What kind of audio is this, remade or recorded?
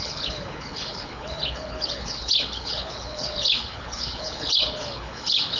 remade